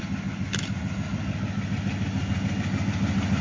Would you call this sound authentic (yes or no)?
yes